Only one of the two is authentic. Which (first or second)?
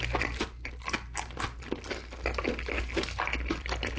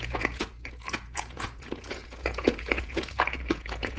first